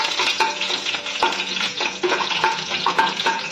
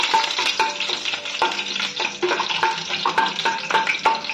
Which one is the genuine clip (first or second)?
second